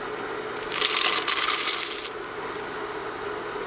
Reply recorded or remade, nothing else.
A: recorded